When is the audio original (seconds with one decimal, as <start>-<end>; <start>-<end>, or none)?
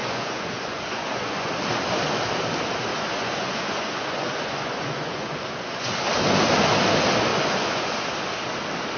1.5-2.9; 6.1-7.3; 7.9-9.0